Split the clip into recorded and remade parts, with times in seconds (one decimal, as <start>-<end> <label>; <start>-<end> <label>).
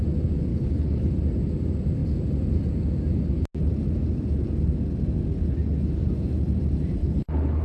0.0-0.5 recorded; 0.5-1.1 remade; 1.1-7.0 recorded; 7.0-7.6 remade